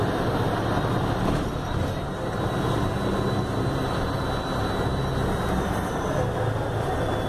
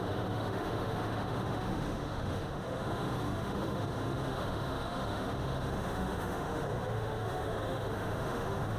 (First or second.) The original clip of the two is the first